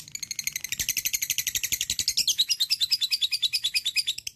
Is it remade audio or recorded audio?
recorded